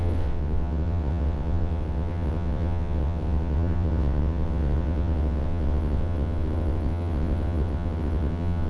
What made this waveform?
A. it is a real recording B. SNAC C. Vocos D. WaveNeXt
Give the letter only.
D